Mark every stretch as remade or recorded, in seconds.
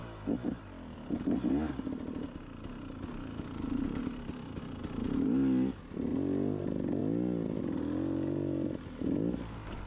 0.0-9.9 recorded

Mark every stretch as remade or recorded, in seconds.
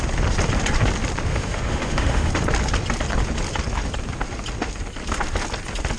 0.0-1.3 recorded; 1.3-2.3 remade; 2.3-6.0 recorded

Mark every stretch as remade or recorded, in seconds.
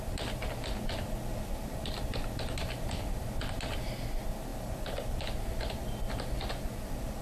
0.0-7.2 remade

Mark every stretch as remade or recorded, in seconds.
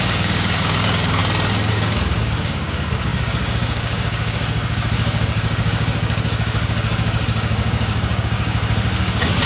0.0-1.2 remade; 1.2-1.7 recorded; 1.7-9.5 remade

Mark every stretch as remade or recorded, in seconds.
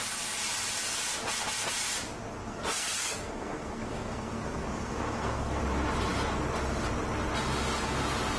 0.0-2.4 recorded; 2.4-5.6 remade; 5.6-8.4 recorded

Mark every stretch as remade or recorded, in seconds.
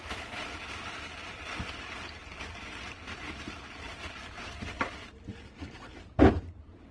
0.0-6.9 recorded